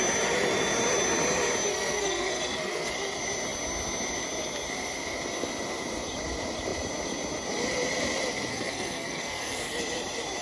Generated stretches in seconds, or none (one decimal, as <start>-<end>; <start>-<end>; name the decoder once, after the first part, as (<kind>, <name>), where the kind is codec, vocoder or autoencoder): 1.7-2.9 (codec, SNAC); 8.5-9.8